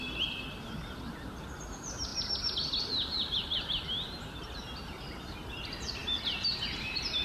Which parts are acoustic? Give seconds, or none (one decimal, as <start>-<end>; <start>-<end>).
0.0-2.1; 4.3-7.2